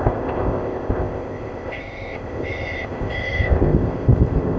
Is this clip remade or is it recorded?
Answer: remade